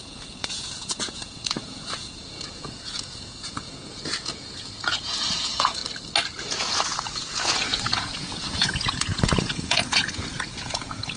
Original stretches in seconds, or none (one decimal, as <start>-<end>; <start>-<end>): 5.8-6.4